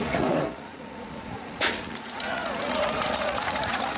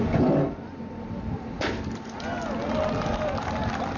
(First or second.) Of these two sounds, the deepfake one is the first